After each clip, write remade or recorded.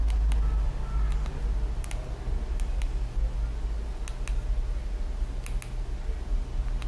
recorded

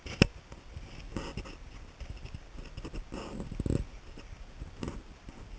recorded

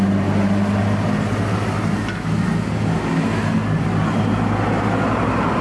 recorded